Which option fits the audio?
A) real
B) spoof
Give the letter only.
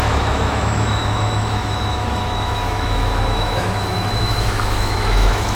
B